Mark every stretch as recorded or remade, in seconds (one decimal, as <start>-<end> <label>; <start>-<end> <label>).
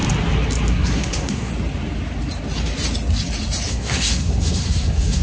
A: 0.0-0.7 recorded; 0.7-1.5 remade; 1.5-3.7 recorded; 3.7-5.2 remade